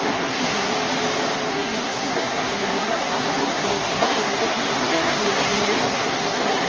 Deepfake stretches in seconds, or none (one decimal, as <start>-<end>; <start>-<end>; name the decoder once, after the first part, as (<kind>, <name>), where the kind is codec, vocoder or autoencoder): 0.0-0.7 (codec, SNAC); 1.5-6.7